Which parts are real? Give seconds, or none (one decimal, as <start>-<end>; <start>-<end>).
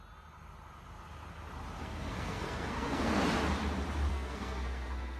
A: 0.0-1.8; 3.2-4.1